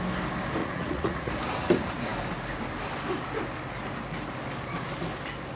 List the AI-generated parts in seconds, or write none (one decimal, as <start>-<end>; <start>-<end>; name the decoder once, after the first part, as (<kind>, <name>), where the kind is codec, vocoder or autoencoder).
0.6-1.3 (vocoder, Vocos)